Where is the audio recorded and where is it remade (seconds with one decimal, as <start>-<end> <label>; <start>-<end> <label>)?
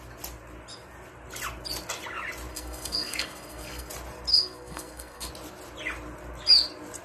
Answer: 0.0-2.5 recorded; 2.5-3.9 remade; 3.9-4.3 recorded; 4.3-5.3 remade; 5.3-7.0 recorded